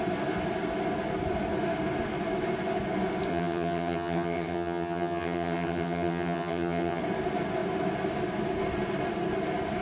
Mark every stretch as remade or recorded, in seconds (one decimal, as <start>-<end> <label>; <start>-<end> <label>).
0.0-3.3 recorded; 3.3-7.0 remade; 7.0-9.8 recorded